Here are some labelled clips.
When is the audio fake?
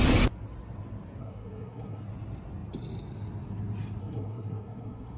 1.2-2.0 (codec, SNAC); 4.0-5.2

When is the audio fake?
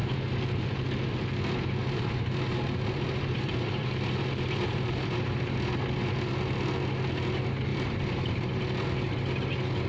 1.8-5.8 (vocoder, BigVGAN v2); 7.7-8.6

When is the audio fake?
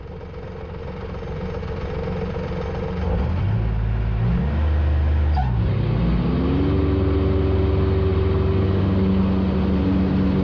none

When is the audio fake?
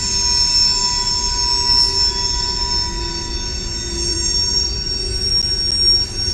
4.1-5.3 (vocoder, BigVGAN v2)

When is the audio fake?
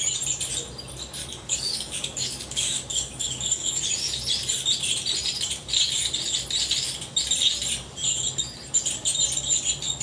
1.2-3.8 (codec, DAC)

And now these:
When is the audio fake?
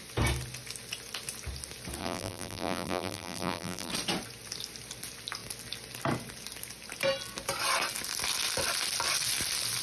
2.0-3.9 (vocoder, BigVGAN v2)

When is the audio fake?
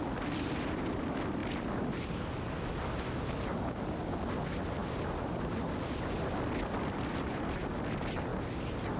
none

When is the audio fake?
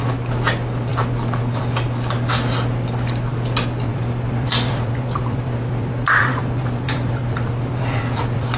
3.9-8.6 (vocoder, BigVGAN v2)